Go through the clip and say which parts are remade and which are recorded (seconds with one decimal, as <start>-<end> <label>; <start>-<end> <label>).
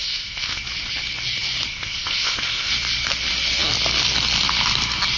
0.0-0.6 remade; 0.6-1.7 recorded; 1.7-2.7 remade; 2.7-5.2 recorded